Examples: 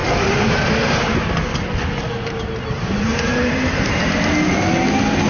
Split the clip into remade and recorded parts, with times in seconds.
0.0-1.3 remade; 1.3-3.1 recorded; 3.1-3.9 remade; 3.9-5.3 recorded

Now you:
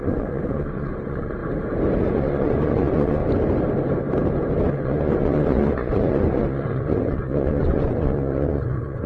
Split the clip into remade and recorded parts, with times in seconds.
0.0-1.4 remade; 1.4-2.0 recorded; 2.0-3.2 remade; 3.2-4.7 recorded; 4.7-9.1 remade

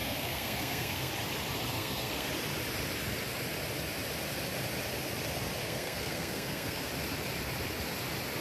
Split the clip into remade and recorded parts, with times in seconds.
0.0-1.1 remade; 1.1-1.7 recorded; 1.7-2.3 remade; 2.3-5.6 recorded; 5.6-6.9 remade; 6.9-8.4 recorded